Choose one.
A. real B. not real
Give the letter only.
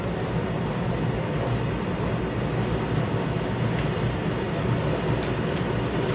A